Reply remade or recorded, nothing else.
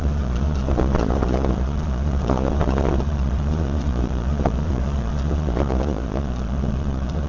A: remade